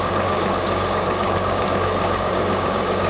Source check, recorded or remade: remade